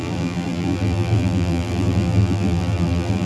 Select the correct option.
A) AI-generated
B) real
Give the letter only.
A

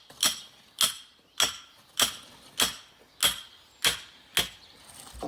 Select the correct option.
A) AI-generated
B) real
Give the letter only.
B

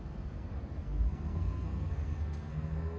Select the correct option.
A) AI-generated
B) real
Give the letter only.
A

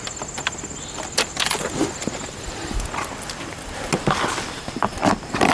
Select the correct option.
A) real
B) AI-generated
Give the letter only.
A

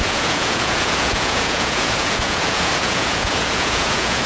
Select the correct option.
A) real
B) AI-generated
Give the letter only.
B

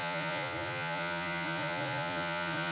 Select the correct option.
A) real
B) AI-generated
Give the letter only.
B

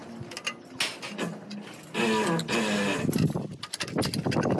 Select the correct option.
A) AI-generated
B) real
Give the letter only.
B